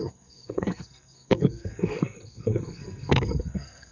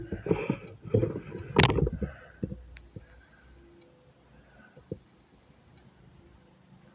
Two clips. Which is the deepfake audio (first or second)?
first